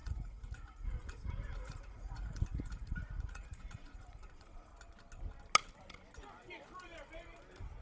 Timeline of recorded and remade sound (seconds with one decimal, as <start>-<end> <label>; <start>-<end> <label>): 0.0-4.7 remade; 4.7-7.8 recorded